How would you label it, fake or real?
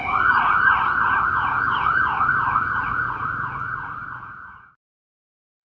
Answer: fake